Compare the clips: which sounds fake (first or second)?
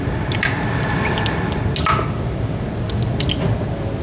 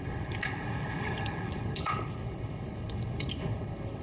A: second